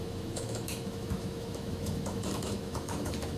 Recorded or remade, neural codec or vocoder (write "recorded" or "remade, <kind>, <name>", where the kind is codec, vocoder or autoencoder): remade, autoencoder, DAC-VAE